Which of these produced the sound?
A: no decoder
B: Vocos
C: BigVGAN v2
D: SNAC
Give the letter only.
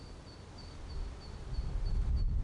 A